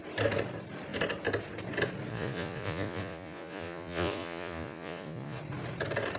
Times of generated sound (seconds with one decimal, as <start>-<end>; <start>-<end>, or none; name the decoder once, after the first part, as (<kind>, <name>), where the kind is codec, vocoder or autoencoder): 2.1-5.4 (vocoder, Vocos)